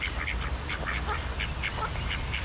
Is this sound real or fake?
real